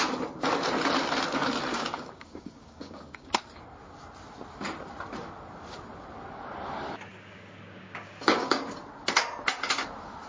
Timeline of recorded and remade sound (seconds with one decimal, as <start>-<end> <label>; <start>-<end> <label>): 0.0-1.7 recorded; 1.7-3.3 remade; 3.3-7.1 recorded; 7.1-8.7 remade; 8.7-10.3 recorded